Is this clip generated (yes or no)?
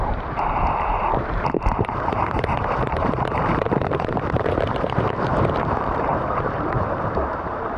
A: yes